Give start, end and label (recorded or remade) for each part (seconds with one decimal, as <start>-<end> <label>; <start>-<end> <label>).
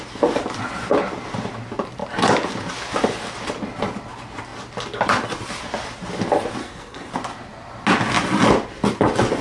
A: 0.0-6.6 recorded; 6.6-7.1 remade; 7.1-9.4 recorded